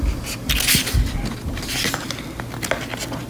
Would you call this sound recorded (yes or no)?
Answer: yes